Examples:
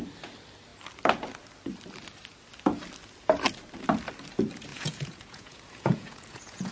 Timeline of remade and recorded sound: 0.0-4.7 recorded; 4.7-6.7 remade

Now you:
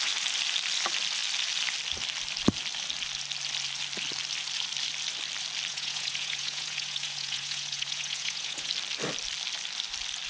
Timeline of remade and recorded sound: 0.0-5.7 recorded; 5.7-8.7 remade; 8.7-10.3 recorded

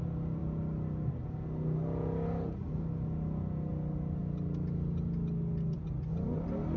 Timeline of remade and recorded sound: 0.0-6.8 recorded